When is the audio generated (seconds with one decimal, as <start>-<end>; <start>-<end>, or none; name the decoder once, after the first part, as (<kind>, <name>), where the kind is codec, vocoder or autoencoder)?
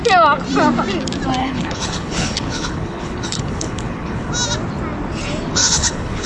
1.4-4.3 (codec, HILCodec); 5.5-6.3